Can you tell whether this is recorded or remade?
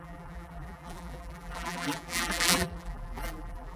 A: remade